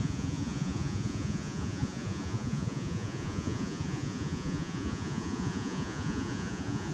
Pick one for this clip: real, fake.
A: fake